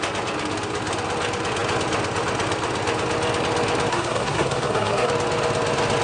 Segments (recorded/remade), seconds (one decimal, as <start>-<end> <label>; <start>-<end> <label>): 0.0-3.9 recorded; 3.9-5.1 remade; 5.1-6.0 recorded